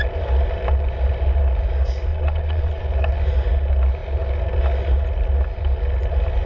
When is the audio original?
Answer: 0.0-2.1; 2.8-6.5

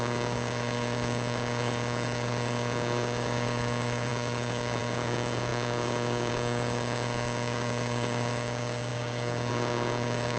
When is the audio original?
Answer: none